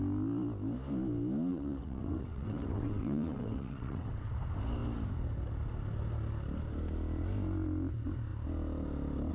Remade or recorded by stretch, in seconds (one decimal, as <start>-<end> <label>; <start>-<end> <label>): 0.0-1.5 recorded; 1.5-4.3 remade; 4.3-9.3 recorded